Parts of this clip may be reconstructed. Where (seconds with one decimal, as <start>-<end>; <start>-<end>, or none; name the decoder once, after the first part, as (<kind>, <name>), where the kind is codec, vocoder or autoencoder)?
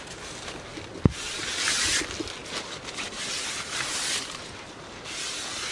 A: 0.7-1.8 (vocoder, BigVGAN v2); 2.4-5.3